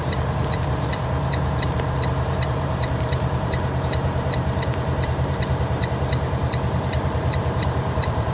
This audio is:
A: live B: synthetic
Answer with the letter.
B